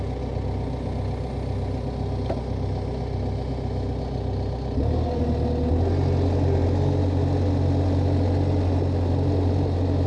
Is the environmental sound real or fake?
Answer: real